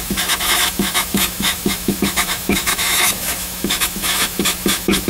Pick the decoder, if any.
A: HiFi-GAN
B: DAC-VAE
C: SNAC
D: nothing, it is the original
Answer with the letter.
B